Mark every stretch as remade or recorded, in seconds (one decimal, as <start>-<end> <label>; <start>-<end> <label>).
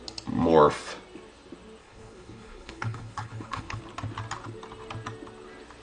0.0-1.8 recorded; 1.8-3.8 remade; 3.8-5.8 recorded